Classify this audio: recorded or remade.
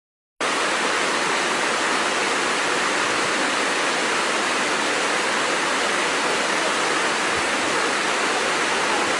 recorded